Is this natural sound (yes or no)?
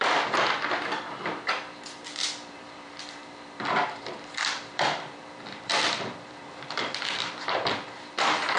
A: no